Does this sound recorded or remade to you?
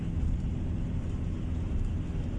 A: recorded